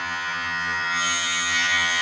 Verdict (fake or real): fake